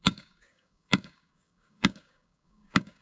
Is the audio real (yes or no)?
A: no